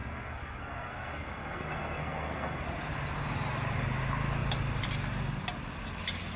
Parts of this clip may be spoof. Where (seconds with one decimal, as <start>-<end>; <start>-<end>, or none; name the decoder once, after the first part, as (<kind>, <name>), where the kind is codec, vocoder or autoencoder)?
0.0-2.6 (codec, SNAC)